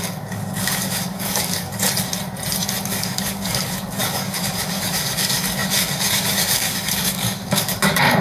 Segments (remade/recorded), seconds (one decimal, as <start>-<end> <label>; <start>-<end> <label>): 0.0-1.7 remade; 1.7-2.8 recorded; 2.8-8.2 remade